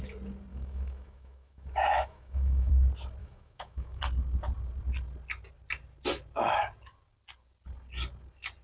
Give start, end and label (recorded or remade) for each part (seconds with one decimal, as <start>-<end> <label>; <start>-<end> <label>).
0.0-0.5 recorded; 0.5-2.7 remade; 2.7-3.2 recorded; 3.2-4.0 remade; 4.0-8.6 recorded